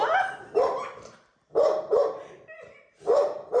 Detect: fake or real fake